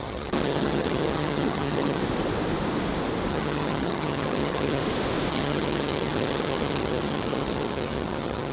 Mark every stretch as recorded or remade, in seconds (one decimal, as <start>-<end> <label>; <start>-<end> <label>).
0.0-2.0 remade; 2.0-3.3 recorded; 3.3-4.8 remade; 4.8-5.3 recorded; 5.3-8.5 remade